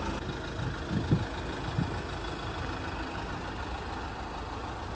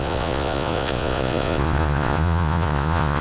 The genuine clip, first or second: first